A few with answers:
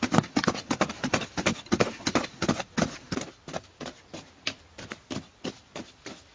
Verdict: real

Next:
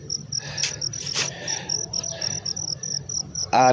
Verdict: fake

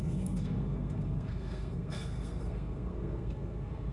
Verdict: fake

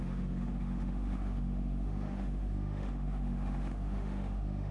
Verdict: fake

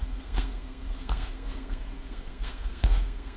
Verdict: fake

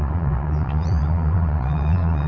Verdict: fake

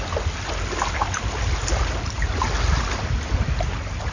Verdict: real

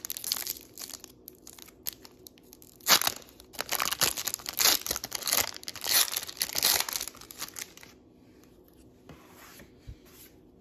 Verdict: real